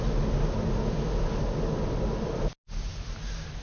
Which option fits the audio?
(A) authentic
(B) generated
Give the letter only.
A